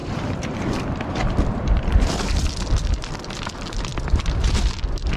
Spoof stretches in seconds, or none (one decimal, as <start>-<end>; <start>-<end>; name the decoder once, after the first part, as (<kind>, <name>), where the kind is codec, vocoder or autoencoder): 0.0-3.1 (vocoder, BigVGAN v2); 3.9-4.7